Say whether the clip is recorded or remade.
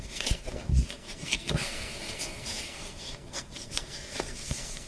remade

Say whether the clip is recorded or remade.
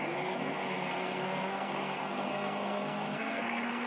remade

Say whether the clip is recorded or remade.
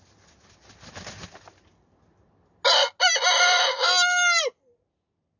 recorded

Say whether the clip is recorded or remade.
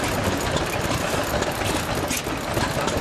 recorded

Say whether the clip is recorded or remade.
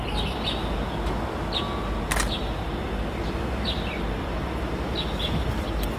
recorded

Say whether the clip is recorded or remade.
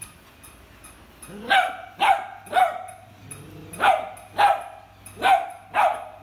recorded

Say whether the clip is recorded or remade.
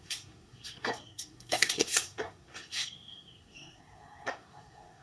remade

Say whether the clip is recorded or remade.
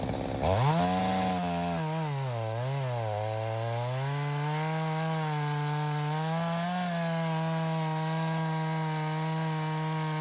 recorded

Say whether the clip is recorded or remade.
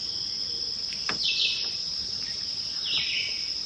recorded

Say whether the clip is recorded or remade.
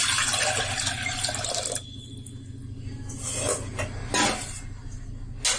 recorded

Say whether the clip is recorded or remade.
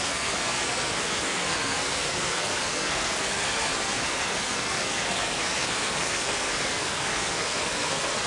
remade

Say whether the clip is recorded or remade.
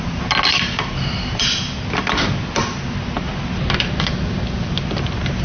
recorded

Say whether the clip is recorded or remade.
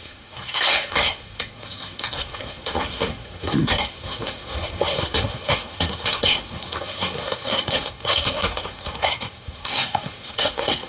remade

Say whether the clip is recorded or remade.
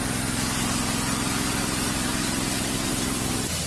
recorded